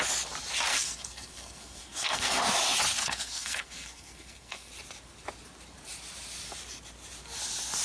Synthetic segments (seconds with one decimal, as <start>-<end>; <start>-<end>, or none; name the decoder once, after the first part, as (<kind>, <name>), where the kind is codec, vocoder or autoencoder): 0.7-2.4 (codec, SNAC); 3.0-4.7